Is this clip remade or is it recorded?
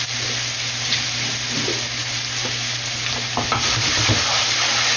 recorded